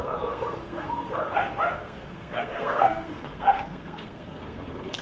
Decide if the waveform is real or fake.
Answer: fake